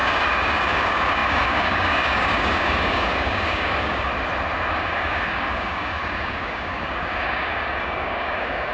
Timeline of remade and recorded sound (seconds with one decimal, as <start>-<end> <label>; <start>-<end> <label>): 0.0-4.1 remade; 4.1-4.7 recorded; 4.7-8.7 remade

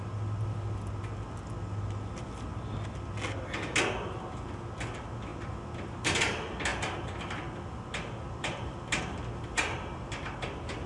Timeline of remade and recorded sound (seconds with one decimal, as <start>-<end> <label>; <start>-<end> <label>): 0.0-10.9 recorded

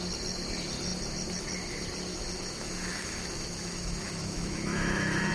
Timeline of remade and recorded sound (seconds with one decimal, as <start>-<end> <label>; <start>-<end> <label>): 0.0-2.1 recorded; 2.1-5.3 remade

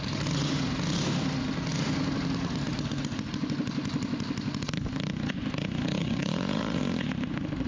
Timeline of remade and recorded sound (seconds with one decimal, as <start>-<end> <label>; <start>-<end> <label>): 0.0-6.0 recorded; 6.0-6.8 remade; 6.8-7.7 recorded